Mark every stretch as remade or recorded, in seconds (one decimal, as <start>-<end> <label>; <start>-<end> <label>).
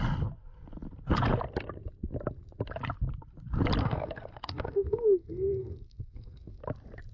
0.0-3.8 recorded; 3.8-6.6 remade; 6.6-7.1 recorded